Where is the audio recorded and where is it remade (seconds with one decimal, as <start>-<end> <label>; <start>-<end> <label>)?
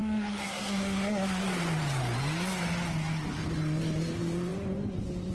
0.0-1.4 remade; 1.4-5.3 recorded